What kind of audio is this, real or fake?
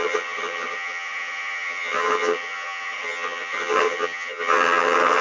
fake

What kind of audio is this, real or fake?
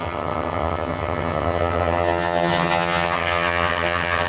fake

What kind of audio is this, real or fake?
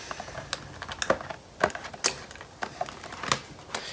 real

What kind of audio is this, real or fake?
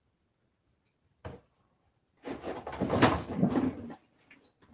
real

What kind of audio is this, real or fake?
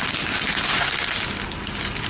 real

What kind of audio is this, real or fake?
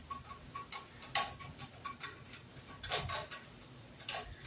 real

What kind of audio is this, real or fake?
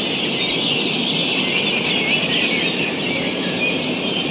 real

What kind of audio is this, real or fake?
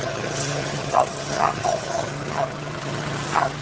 fake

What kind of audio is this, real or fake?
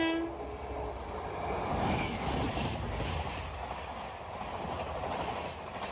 real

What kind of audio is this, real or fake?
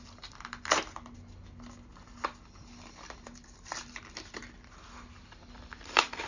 real